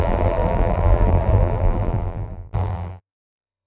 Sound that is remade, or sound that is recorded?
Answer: remade